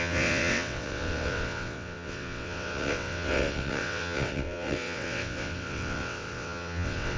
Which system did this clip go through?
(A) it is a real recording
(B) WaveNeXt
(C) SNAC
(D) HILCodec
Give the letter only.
B